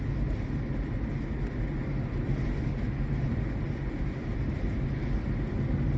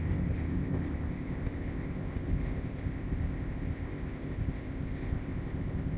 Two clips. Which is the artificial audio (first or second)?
second